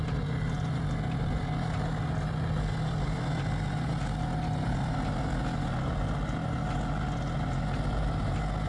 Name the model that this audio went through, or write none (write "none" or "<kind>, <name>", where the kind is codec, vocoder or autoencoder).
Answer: none